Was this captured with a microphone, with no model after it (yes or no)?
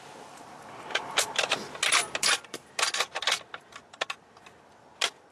yes